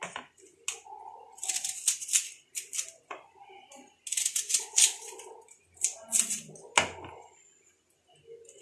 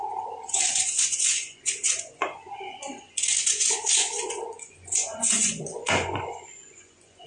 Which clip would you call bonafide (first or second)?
first